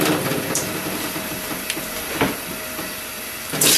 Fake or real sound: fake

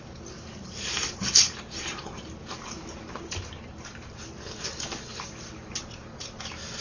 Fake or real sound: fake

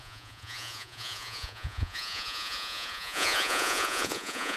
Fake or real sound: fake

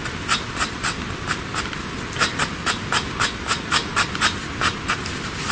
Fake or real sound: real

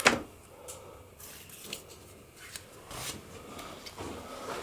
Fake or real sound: real